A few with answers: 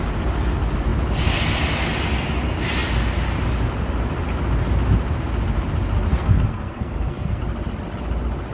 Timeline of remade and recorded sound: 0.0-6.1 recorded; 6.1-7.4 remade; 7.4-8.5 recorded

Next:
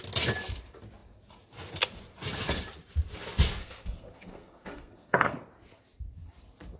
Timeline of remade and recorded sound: 0.0-3.6 recorded; 3.6-5.4 remade; 5.4-6.8 recorded